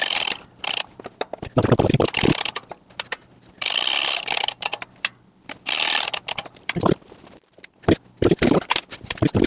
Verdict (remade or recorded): remade